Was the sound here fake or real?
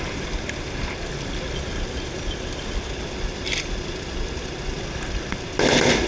real